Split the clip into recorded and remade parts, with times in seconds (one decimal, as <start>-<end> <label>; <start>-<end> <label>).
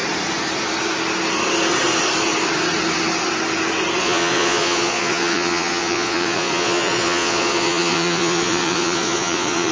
0.0-4.0 recorded; 4.0-9.7 remade